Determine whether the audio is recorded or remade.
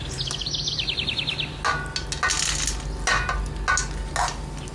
recorded